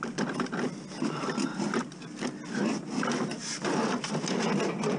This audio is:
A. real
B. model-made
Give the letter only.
A